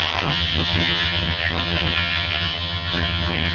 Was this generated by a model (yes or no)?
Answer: yes